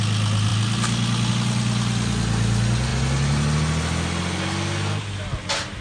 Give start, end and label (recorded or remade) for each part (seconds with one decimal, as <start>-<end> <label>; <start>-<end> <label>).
0.0-5.8 recorded

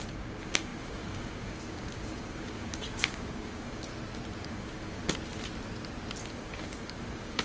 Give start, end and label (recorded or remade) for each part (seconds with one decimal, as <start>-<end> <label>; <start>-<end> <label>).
0.0-3.9 remade; 3.9-4.4 recorded; 4.4-5.0 remade; 5.0-6.2 recorded; 6.2-7.4 remade

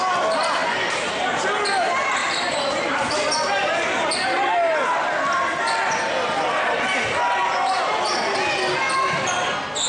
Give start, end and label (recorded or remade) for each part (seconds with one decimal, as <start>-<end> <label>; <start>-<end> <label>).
0.0-0.6 recorded; 0.6-1.4 remade; 1.4-2.2 recorded; 2.2-2.8 remade; 2.8-9.9 recorded

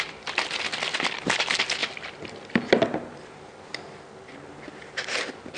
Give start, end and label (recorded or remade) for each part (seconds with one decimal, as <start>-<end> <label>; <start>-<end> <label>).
0.0-5.6 recorded